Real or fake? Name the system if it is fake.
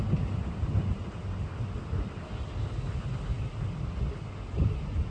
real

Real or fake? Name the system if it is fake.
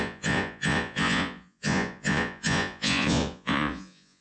fake, vocoder, Vocos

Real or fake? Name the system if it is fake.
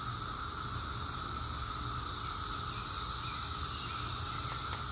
real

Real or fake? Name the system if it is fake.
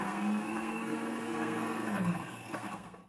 fake, codec, SNAC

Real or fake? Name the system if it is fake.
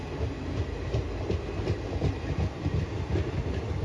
real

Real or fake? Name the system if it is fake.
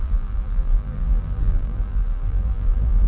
fake, vocoder, BigVGAN v2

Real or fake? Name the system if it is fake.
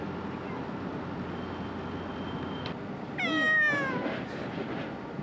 real